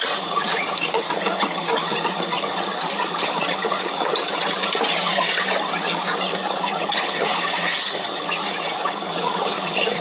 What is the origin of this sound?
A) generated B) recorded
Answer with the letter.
A